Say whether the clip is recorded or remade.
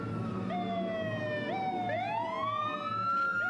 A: recorded